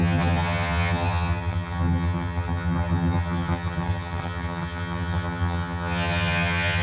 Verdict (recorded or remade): remade